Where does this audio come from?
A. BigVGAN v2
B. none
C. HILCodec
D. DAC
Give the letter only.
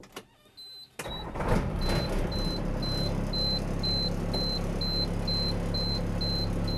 B